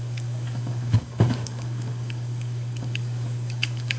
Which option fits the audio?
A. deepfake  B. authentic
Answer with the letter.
A